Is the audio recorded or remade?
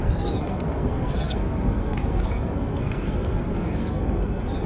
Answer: remade